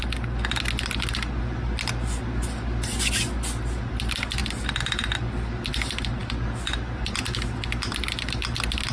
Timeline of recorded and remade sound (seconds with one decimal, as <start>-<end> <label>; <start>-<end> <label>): 0.0-8.9 recorded